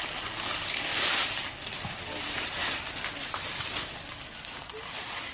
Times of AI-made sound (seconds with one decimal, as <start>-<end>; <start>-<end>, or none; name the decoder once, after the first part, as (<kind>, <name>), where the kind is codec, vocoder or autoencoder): none